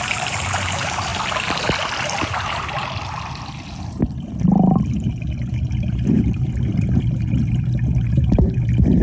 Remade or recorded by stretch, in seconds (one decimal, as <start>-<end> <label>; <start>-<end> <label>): 0.0-1.1 remade; 1.1-2.0 recorded; 2.0-2.8 remade; 2.8-4.4 recorded; 4.4-9.0 remade